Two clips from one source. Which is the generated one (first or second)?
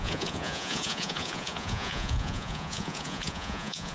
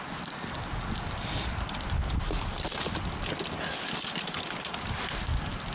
first